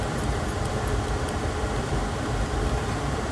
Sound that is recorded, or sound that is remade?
remade